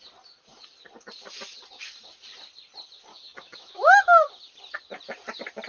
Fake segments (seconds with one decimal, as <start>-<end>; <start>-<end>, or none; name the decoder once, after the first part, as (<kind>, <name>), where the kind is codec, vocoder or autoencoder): 3.1-4.3 (autoencoder, DAC-VAE)